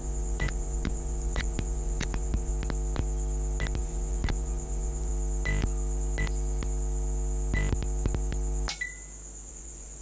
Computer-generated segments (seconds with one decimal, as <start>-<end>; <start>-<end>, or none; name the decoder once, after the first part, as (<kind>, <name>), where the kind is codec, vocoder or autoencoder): 0.0-2.5 (vocoder, Vocos); 3.8-5.1; 9.5-10.0